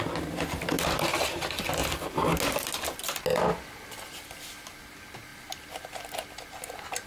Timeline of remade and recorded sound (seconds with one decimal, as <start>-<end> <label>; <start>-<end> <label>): 0.0-7.1 recorded